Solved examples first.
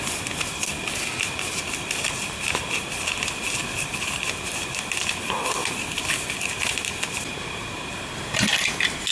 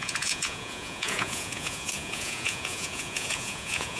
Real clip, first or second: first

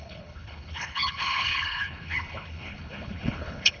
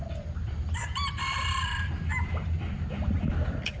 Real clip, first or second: second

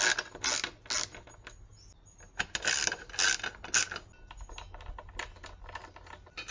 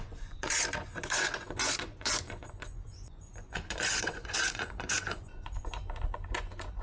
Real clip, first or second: first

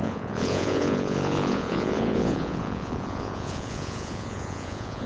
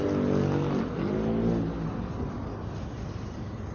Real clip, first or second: second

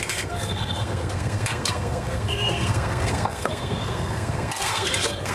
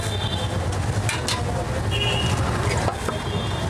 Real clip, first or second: second